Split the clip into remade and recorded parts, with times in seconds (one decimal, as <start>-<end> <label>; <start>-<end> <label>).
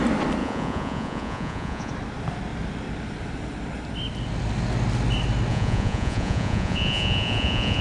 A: 0.0-0.4 recorded; 0.4-1.9 remade; 1.9-5.5 recorded; 5.5-7.8 remade